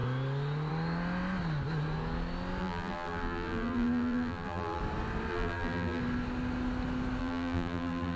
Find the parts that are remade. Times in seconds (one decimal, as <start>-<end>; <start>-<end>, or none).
2.6-4.8; 5.3-6.0; 7.2-8.2

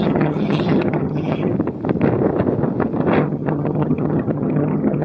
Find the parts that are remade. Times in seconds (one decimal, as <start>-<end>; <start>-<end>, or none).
0.0-1.5; 3.2-5.0

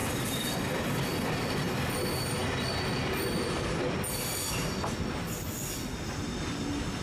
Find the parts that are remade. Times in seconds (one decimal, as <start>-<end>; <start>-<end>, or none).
none

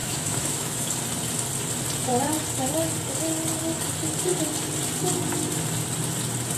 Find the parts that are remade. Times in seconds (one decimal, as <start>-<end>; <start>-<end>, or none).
0.0-0.9